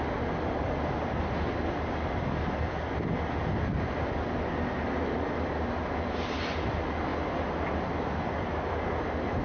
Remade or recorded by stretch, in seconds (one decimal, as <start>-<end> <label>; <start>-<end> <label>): 0.0-9.4 recorded